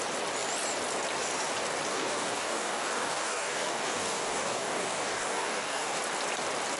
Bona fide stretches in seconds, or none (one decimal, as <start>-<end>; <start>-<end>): 0.0-1.9; 6.0-6.8